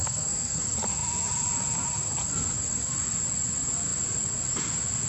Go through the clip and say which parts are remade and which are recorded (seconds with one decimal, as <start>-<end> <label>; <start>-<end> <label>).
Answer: 0.0-0.6 remade; 0.6-5.1 recorded

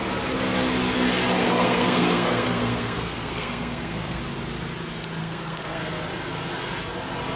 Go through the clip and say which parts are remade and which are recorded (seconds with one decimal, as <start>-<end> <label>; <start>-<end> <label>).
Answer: 0.0-1.4 recorded; 1.4-4.2 remade; 4.2-5.2 recorded; 5.2-5.8 remade; 5.8-7.4 recorded

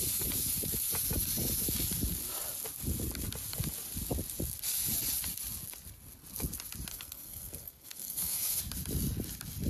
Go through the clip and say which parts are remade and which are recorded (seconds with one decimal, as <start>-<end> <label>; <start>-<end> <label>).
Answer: 0.0-6.9 recorded; 6.9-8.6 remade; 8.6-9.7 recorded

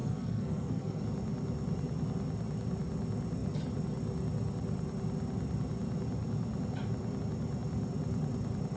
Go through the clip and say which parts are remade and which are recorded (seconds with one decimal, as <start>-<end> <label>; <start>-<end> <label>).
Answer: 0.0-1.0 remade; 1.0-8.8 recorded